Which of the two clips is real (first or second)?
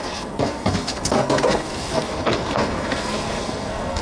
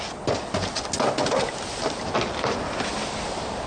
second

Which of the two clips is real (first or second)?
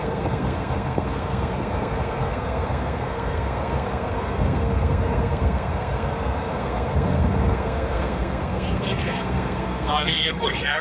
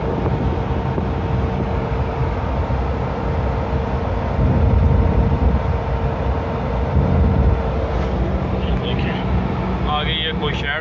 second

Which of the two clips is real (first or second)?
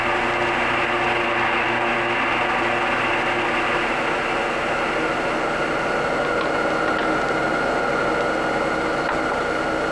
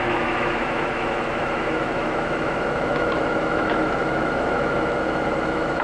first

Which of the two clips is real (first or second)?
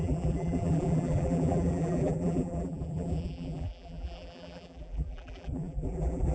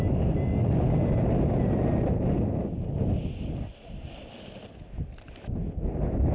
second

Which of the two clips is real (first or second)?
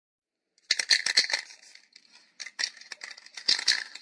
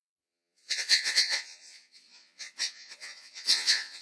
first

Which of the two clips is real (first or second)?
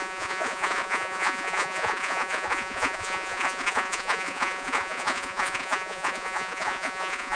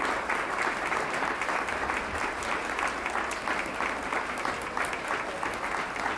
second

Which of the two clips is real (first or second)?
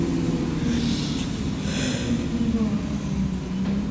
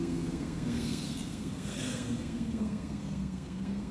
first